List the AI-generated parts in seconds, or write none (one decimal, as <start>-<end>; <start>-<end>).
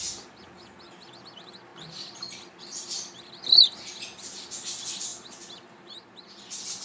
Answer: 1.7-2.6